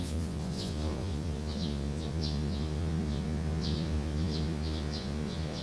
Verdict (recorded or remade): remade